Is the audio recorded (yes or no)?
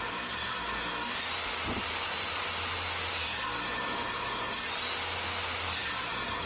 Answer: yes